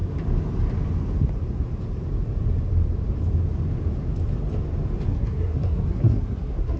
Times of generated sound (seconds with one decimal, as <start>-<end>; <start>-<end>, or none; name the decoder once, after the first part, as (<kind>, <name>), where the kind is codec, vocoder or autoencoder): 5.1-6.8 (codec, SNAC)